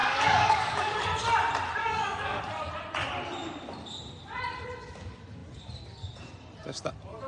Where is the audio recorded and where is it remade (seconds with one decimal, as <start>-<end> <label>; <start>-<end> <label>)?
0.0-1.0 remade; 1.0-1.8 recorded; 1.8-2.4 remade; 2.4-7.3 recorded